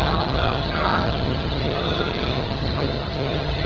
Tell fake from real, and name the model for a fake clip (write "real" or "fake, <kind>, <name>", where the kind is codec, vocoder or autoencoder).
fake, vocoder, HiFi-GAN